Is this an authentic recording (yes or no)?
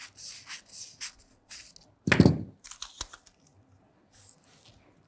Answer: yes